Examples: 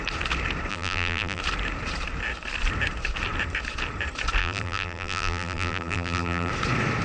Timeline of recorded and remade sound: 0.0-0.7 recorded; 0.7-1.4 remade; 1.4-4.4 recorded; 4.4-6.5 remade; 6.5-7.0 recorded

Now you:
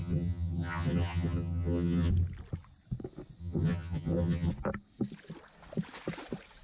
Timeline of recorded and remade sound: 0.0-2.1 remade; 2.1-3.4 recorded; 3.4-4.5 remade; 4.5-6.6 recorded

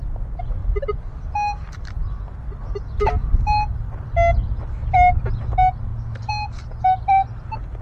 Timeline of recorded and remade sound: 0.0-0.6 recorded; 0.6-1.1 remade; 1.1-7.8 recorded

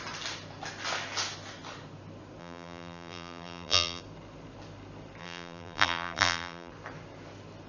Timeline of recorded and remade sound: 0.0-2.4 recorded; 2.4-4.0 remade; 4.0-5.2 recorded; 5.2-6.7 remade; 6.7-7.7 recorded

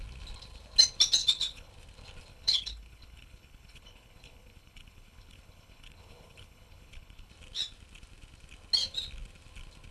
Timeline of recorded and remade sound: 0.0-1.2 recorded; 1.2-1.7 remade; 1.7-2.3 recorded; 2.3-7.3 remade; 7.3-9.9 recorded

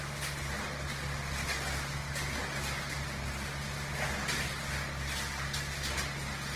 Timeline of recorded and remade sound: 0.0-6.6 recorded

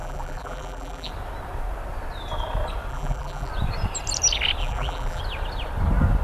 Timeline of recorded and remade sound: 0.0-1.1 remade; 1.1-2.9 recorded; 2.9-3.5 remade; 3.5-4.6 recorded; 4.6-5.2 remade; 5.2-6.2 recorded

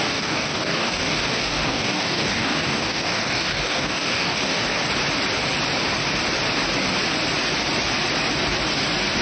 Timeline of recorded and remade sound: 0.0-4.6 remade; 4.6-9.2 recorded